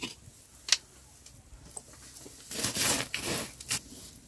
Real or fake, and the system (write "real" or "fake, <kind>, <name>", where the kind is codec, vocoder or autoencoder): real